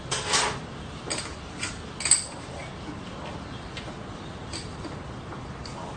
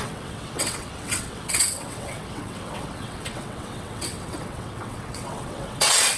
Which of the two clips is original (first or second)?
first